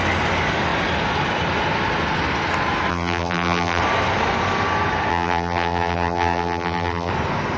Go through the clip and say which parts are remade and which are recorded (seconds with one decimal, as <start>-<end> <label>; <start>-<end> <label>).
0.0-2.9 recorded; 2.9-3.8 remade; 3.8-5.1 recorded; 5.1-7.1 remade; 7.1-7.6 recorded